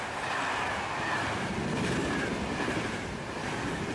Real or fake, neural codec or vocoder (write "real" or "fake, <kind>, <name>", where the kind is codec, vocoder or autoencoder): real